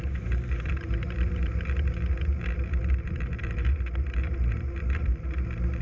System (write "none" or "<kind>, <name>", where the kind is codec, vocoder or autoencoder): vocoder, BigVGAN v2